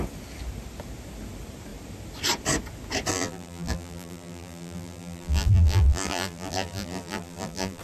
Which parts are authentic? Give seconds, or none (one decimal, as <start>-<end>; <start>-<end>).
0.0-3.1